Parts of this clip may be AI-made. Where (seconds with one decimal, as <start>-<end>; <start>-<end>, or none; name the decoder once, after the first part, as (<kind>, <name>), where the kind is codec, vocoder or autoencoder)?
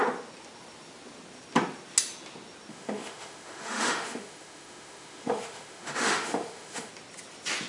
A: 2.7-6.9 (autoencoder, DAC-VAE)